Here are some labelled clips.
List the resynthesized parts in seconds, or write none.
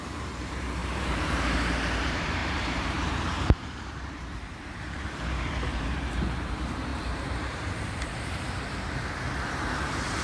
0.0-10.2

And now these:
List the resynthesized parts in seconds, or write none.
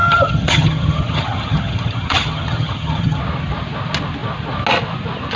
0.0-3.2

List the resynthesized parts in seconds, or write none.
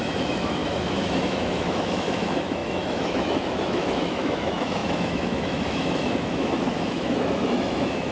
0.0-8.1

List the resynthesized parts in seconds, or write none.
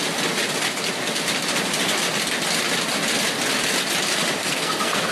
4.4-5.1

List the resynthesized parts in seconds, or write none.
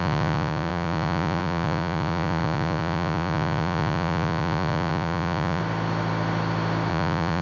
0.0-5.6; 6.9-7.4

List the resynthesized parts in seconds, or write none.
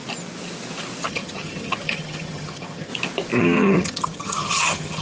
1.1-2.9; 3.4-5.0